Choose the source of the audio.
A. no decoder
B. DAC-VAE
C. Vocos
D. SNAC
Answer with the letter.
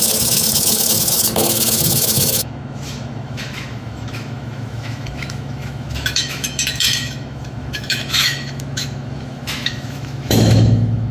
B